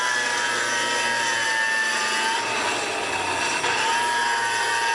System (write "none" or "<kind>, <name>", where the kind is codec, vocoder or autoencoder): none